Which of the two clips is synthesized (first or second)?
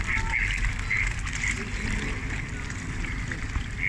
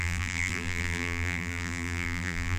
second